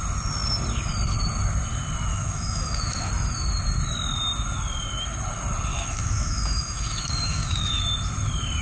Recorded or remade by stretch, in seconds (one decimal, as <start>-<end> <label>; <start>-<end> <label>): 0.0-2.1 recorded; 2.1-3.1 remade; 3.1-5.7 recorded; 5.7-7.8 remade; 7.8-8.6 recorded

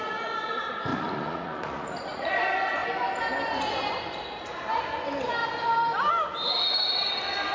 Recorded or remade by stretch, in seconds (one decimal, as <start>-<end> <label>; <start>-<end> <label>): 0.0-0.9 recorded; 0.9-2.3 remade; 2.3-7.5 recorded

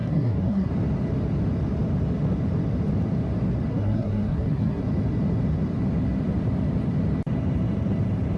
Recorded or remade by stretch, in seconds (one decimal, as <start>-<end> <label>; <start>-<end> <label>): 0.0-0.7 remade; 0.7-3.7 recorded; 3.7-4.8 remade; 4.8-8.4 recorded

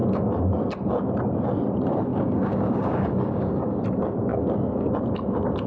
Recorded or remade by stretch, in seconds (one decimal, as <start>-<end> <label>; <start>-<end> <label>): 0.0-0.5 remade; 0.5-2.1 recorded; 2.1-3.8 remade; 3.8-4.3 recorded; 4.3-4.9 remade; 4.9-5.7 recorded

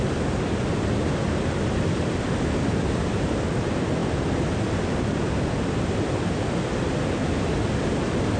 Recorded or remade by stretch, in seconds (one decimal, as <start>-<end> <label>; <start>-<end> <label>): 0.0-8.4 recorded